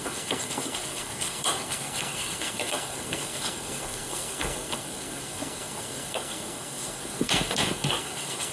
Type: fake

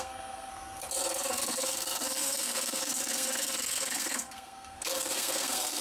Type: fake